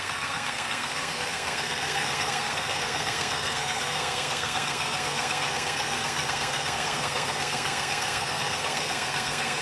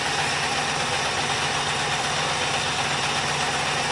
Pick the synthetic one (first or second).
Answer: first